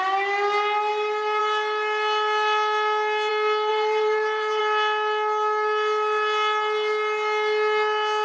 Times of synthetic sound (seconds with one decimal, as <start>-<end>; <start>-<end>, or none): 3.7-4.6